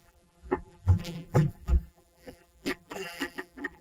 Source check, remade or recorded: remade